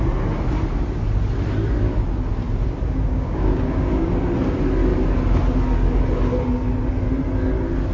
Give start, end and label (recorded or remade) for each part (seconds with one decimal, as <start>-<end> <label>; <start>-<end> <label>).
0.0-3.1 recorded; 3.1-4.1 remade; 4.1-7.9 recorded

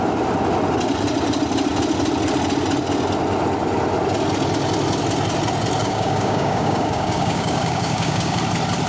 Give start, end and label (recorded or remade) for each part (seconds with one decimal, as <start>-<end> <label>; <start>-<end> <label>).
0.0-5.8 recorded; 5.8-8.4 remade; 8.4-8.9 recorded